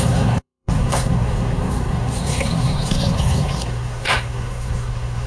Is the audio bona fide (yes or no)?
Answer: no